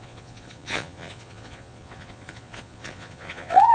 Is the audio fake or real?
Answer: fake